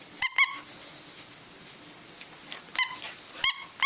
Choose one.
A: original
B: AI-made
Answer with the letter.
A